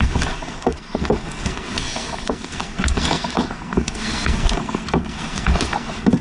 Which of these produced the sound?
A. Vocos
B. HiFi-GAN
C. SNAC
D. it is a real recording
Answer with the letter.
C